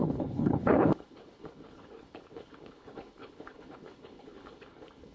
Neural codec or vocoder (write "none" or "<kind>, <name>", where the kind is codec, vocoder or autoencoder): codec, HILCodec